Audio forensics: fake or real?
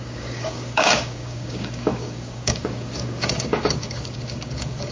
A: fake